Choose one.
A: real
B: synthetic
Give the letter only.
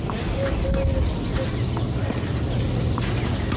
A